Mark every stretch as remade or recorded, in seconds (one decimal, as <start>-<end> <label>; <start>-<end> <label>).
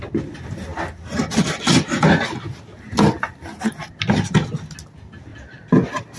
0.0-6.2 recorded